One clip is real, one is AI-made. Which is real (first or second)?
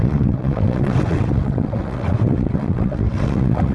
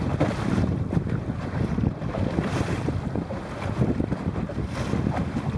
second